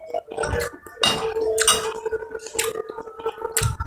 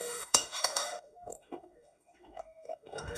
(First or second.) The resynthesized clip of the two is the second